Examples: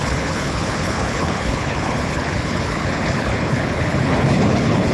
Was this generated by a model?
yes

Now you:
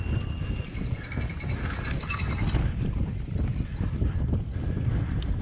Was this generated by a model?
no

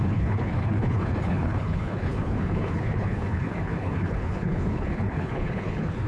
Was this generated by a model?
yes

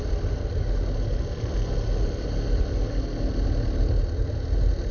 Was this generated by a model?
no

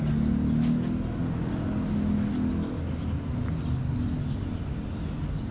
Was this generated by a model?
no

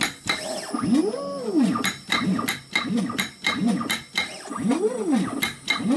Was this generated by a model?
no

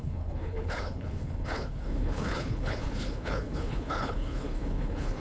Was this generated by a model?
yes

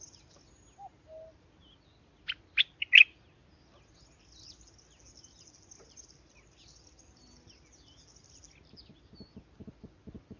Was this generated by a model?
no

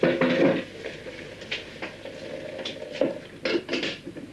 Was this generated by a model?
no